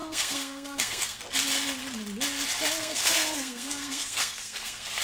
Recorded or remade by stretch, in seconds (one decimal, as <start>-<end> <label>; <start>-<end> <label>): 0.0-1.2 remade; 1.2-2.8 recorded; 2.8-5.0 remade